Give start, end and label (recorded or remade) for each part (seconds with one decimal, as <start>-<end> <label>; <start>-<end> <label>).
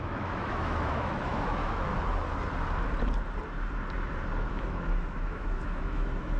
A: 0.0-1.9 remade; 1.9-4.5 recorded; 4.5-6.4 remade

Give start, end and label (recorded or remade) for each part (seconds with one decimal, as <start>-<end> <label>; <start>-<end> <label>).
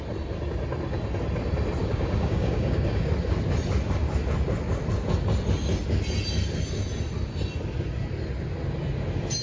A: 0.0-1.8 recorded; 1.8-3.1 remade; 3.1-9.4 recorded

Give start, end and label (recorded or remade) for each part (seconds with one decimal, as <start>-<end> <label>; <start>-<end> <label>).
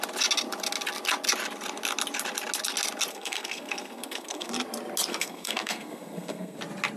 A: 0.0-3.1 recorded; 3.1-4.5 remade; 4.5-5.1 recorded; 5.1-6.6 remade; 6.6-7.0 recorded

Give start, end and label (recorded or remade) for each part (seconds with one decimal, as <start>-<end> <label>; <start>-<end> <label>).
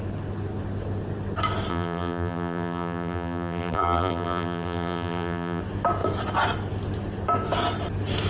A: 0.0-1.7 recorded; 1.7-5.6 remade; 5.6-8.3 recorded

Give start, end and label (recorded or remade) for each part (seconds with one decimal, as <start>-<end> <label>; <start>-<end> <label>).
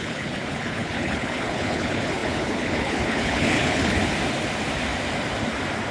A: 0.0-4.0 remade; 4.0-5.9 recorded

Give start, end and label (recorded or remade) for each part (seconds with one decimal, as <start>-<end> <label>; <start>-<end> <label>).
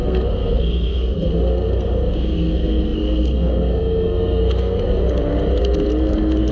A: 0.0-5.0 remade; 5.0-5.6 recorded; 5.6-6.5 remade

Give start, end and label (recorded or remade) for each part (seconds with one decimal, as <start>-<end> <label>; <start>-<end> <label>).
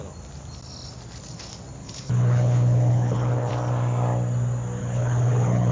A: 0.0-1.8 recorded; 1.8-3.5 remade; 3.5-4.8 recorded; 4.8-5.7 remade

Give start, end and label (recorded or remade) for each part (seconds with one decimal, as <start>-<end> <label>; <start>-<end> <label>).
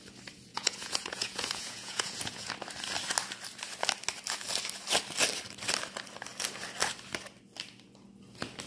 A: 0.0-0.5 recorded; 0.5-2.5 remade; 2.5-8.7 recorded